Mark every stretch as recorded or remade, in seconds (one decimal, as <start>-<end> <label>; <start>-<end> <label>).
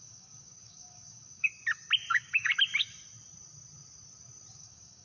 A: 0.0-1.5 remade; 1.5-2.1 recorded; 2.1-2.5 remade; 2.5-4.6 recorded; 4.6-5.0 remade